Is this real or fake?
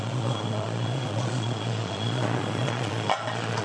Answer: fake